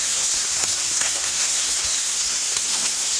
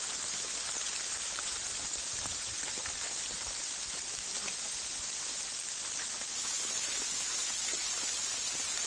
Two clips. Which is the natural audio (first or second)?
second